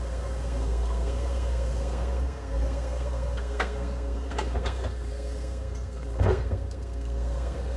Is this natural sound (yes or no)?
no